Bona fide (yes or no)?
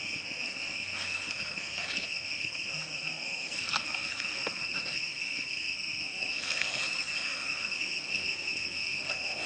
no